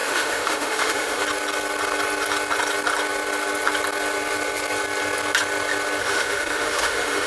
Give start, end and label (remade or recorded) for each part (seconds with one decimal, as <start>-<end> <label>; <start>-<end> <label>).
0.0-1.2 remade; 1.2-6.0 recorded; 6.0-7.3 remade